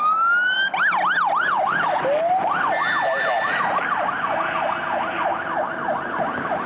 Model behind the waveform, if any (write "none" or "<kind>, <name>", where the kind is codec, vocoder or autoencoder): none